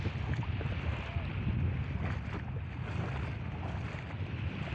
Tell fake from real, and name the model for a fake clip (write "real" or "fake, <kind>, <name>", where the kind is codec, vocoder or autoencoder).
real